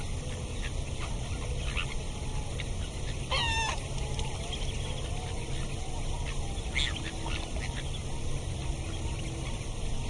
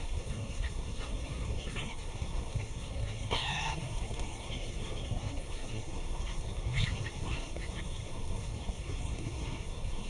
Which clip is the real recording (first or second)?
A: first